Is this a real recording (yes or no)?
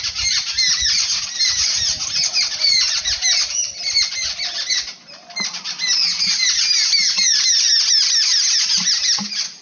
yes